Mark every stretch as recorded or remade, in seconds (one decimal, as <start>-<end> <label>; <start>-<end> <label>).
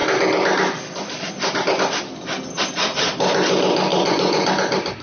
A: 0.0-3.9 recorded; 3.9-4.5 remade; 4.5-5.0 recorded